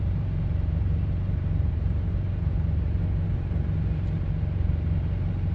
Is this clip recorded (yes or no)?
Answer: no